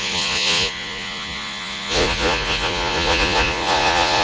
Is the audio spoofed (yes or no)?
yes